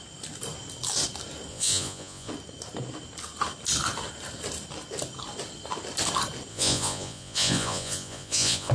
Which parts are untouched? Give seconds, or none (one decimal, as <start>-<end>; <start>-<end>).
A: 0.0-1.5; 2.3-6.5